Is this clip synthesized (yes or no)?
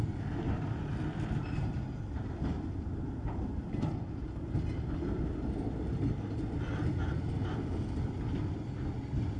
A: no